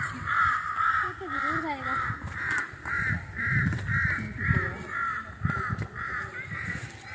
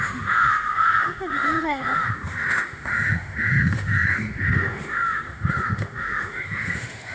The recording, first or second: first